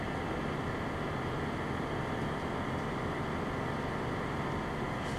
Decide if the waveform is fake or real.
real